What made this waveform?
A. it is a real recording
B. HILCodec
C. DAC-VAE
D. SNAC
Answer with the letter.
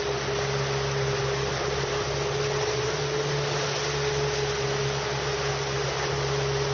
A